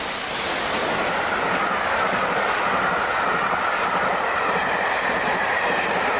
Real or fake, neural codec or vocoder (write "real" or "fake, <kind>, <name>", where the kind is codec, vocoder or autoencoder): real